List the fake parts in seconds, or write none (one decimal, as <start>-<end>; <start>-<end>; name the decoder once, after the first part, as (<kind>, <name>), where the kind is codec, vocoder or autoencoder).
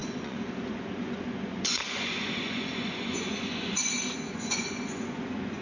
0.0-5.6 (vocoder, Vocos)